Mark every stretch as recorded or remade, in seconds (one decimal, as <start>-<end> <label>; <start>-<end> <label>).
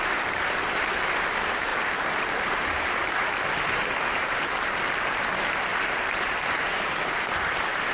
0.0-1.7 recorded; 1.7-3.4 remade; 3.4-5.7 recorded; 5.7-7.9 remade